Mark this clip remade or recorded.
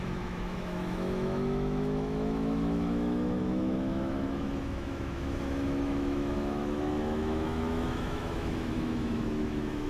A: remade